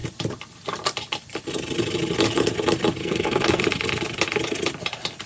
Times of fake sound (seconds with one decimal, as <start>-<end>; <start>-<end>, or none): 3.0-3.6